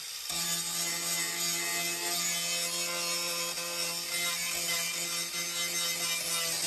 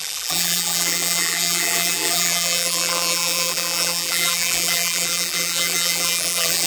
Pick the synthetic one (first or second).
second